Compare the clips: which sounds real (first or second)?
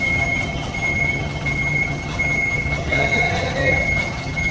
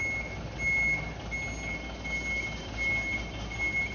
second